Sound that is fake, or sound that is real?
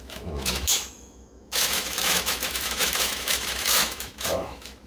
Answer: fake